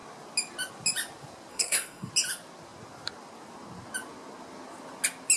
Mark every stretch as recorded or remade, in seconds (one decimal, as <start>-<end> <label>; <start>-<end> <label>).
0.0-1.5 recorded; 1.5-2.1 remade; 2.1-5.4 recorded